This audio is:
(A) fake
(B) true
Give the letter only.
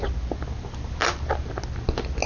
B